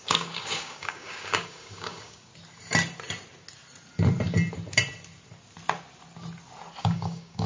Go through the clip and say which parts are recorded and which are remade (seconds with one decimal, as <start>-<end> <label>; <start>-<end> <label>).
0.0-2.3 remade; 2.3-6.8 recorded; 6.8-7.5 remade